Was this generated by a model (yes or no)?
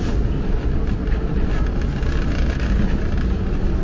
no